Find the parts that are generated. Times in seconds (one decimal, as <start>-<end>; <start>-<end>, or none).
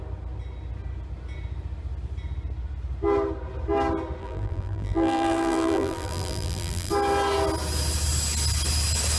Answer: 4.2-6.9